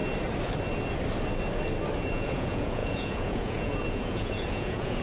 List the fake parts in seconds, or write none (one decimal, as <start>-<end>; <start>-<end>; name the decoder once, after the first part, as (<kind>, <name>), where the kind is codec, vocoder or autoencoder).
2.1-5.0 (vocoder, Vocos)